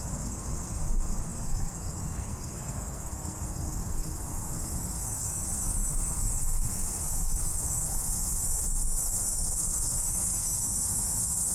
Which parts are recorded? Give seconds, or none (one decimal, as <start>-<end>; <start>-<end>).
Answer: none